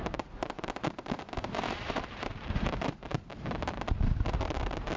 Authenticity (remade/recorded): remade